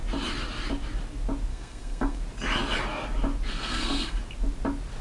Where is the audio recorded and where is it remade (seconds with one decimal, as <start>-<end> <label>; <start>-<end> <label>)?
0.0-1.5 recorded; 1.5-2.2 remade; 2.2-3.5 recorded; 3.5-4.2 remade; 4.2-5.0 recorded